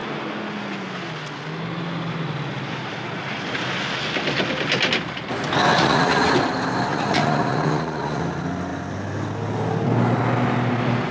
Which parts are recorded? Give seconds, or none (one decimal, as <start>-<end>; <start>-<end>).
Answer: 0.0-5.7; 6.3-6.9; 8.2-11.1